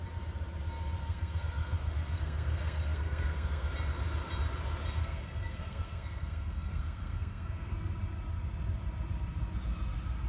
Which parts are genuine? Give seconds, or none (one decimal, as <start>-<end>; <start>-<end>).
0.0-1.0; 3.7-5.0; 7.7-10.3